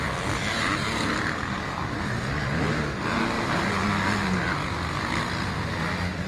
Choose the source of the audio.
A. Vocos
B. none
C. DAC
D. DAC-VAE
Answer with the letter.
B